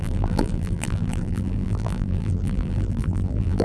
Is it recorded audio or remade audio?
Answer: remade